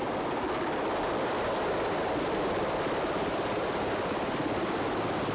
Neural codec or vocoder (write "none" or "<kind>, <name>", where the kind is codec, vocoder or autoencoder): none